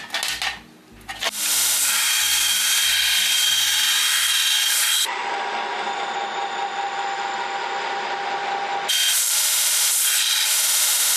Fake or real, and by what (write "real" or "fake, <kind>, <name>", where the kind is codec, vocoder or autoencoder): real